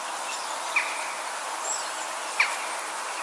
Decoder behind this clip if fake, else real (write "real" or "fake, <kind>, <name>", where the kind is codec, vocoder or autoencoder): real